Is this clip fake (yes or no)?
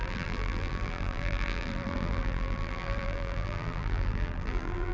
yes